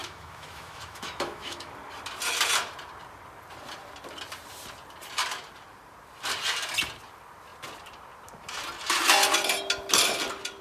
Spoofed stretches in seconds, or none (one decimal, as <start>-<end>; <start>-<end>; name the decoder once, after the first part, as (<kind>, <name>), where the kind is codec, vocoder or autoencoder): 0.0-1.7 (autoencoder, DAC-VAE)